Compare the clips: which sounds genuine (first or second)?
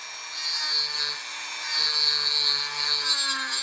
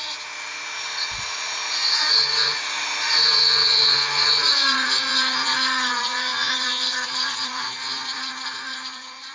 first